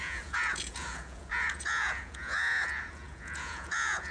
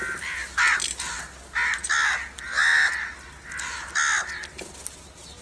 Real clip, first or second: second